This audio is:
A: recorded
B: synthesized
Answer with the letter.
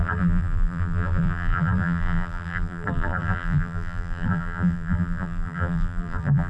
B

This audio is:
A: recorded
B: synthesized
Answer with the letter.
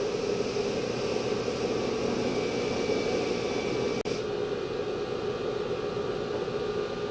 A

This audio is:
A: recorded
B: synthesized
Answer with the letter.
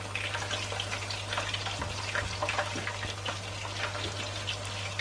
A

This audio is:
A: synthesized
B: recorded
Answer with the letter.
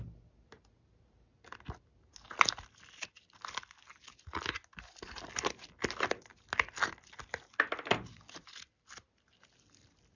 B